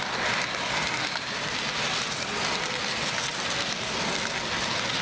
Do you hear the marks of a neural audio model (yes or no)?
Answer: no